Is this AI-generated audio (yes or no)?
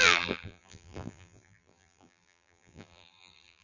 yes